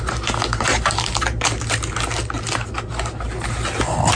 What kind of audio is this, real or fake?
real